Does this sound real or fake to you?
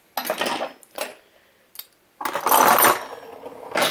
real